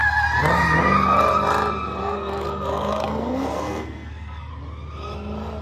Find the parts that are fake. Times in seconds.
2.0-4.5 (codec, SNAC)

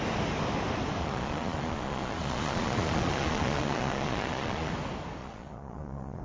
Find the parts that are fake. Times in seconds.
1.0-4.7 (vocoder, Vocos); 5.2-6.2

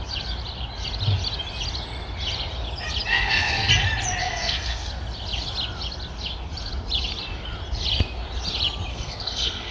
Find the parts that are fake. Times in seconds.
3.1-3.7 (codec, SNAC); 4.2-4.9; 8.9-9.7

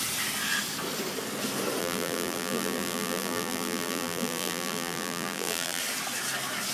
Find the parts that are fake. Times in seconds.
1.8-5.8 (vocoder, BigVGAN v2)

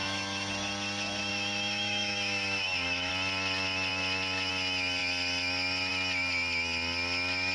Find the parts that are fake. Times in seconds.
0.0-0.5 (autoencoder, DAC-VAE); 1.3-3.1

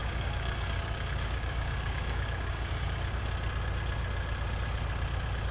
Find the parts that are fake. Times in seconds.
0.0-3.2 (codec, DAC)

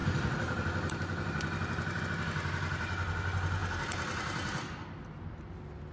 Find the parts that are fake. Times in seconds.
0.0-2.0 (vocoder, BigVGAN v2)